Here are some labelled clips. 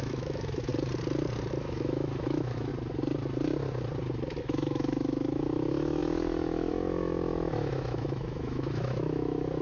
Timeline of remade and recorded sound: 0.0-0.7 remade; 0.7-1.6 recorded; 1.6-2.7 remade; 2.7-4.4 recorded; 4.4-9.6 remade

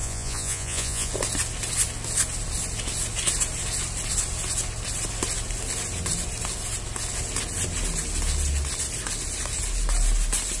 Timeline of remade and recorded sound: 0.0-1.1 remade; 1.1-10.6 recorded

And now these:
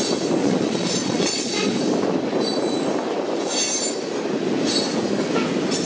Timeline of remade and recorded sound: 0.0-0.4 recorded; 0.4-1.8 remade; 1.8-5.9 recorded

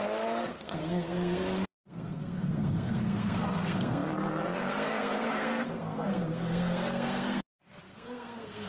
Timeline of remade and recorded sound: 0.0-8.7 remade

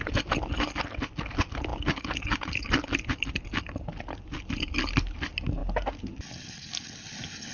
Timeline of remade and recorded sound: 0.0-7.5 recorded